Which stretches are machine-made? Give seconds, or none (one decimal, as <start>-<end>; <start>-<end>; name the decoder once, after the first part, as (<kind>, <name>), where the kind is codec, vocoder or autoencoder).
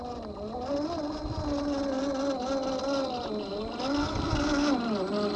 none